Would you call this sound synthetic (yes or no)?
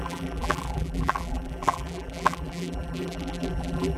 yes